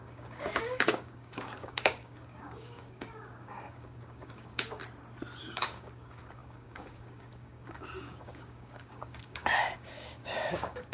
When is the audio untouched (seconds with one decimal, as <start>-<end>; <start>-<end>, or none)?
4.8-5.4